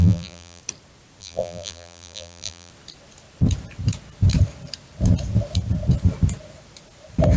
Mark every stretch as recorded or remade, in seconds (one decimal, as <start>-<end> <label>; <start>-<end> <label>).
0.0-0.6 remade; 0.6-1.2 recorded; 1.2-2.7 remade; 2.7-7.4 recorded